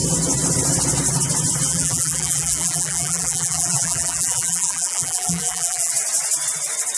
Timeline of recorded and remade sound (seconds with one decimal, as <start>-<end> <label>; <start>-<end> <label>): 0.0-1.7 recorded; 1.7-5.9 remade; 5.9-7.0 recorded